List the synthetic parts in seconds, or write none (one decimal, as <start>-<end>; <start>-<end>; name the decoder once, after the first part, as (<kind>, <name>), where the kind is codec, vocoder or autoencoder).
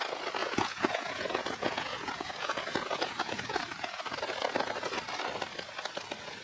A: 0.4-4.0 (vocoder, Vocos)